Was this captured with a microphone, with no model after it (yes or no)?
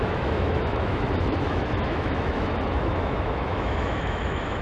no